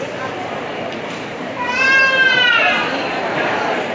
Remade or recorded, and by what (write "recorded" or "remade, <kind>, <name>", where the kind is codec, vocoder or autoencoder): remade, vocoder, BigVGAN v2